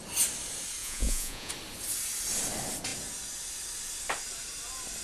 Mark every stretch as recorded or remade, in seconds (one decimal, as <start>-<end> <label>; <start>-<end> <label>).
0.0-0.8 recorded; 0.8-1.5 remade; 1.5-5.0 recorded